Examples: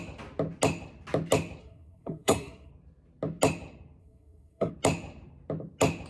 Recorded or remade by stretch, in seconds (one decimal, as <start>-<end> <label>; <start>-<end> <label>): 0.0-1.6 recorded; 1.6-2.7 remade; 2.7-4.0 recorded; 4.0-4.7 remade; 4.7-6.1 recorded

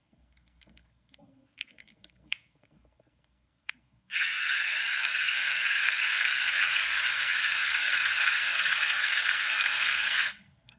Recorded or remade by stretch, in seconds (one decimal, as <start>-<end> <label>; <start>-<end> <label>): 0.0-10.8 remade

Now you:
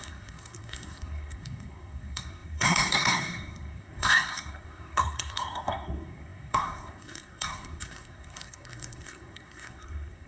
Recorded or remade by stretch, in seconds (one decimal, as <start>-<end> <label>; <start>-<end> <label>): 0.0-10.3 remade

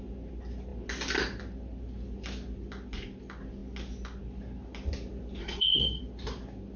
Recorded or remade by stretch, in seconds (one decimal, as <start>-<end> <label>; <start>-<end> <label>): 0.0-5.4 recorded; 5.4-6.0 remade; 6.0-6.8 recorded